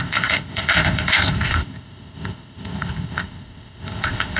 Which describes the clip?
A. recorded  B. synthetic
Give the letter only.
B